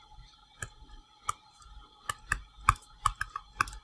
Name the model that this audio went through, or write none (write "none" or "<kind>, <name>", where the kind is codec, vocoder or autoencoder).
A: none